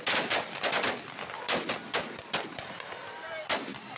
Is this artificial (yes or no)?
no